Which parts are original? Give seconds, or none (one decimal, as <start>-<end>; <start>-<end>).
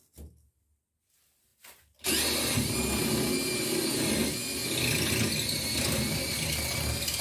0.0-7.2